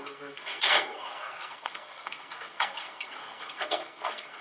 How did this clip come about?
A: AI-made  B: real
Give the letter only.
A